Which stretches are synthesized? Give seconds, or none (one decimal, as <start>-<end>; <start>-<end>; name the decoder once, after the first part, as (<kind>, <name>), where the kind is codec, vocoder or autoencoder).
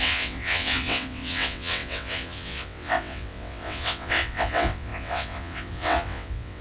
0.0-6.6 (vocoder, WaveNeXt)